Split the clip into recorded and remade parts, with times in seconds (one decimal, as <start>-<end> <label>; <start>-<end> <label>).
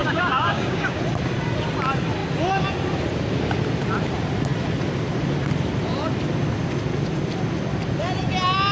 0.0-1.0 remade; 1.0-8.7 recorded